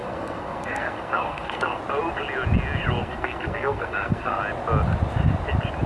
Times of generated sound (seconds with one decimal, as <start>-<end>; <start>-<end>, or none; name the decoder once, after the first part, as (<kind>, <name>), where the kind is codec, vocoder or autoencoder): 0.0-1.8 (codec, SNAC); 3.0-4.4